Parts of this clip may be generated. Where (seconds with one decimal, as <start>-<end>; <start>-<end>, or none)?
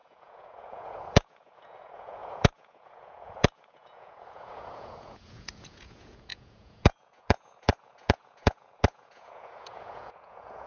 0.0-10.7